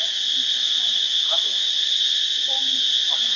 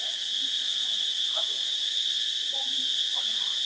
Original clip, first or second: first